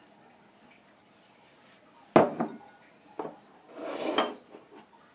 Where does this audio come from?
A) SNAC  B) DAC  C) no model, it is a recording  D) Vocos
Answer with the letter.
C